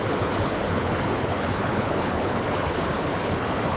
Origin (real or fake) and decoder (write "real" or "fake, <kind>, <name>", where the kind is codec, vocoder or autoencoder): fake, codec, HILCodec